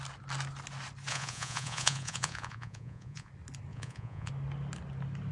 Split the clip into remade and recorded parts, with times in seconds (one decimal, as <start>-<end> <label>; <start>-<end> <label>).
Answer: 0.0-1.1 recorded; 1.1-3.3 remade; 3.3-3.7 recorded; 3.7-4.3 remade; 4.3-5.3 recorded